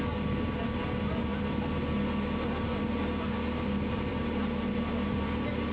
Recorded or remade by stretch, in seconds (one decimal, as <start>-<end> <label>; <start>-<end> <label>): 0.0-5.7 recorded